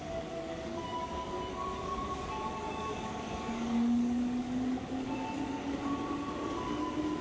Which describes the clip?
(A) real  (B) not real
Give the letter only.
B